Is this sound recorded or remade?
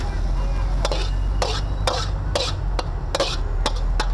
recorded